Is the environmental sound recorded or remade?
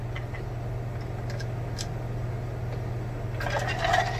recorded